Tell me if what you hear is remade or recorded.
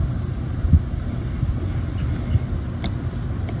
recorded